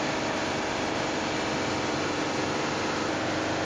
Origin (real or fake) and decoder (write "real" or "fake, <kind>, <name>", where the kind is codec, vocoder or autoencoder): real